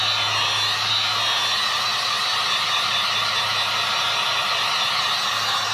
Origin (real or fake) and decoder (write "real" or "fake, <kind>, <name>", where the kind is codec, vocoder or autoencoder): real